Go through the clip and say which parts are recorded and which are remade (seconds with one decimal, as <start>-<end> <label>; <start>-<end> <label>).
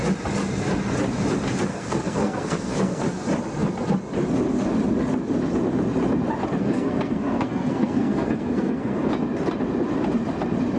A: 0.0-1.7 recorded; 1.7-3.0 remade; 3.0-6.6 recorded; 6.6-9.1 remade; 9.1-10.8 recorded